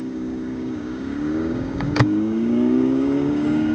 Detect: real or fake fake